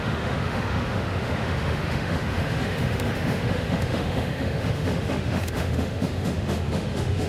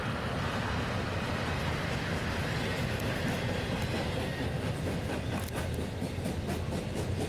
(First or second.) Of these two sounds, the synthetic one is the first